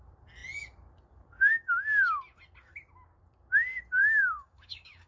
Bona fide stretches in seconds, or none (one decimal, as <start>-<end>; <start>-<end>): 0.0-4.0